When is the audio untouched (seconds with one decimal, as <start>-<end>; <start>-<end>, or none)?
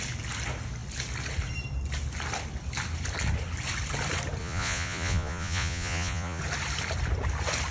0.0-4.4; 6.4-7.7